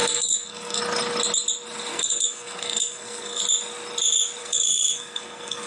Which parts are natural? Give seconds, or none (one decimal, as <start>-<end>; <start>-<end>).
0.8-1.9; 3.4-4.4